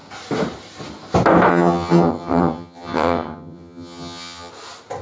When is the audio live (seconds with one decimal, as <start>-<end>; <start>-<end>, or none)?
0.0-1.5; 4.5-5.0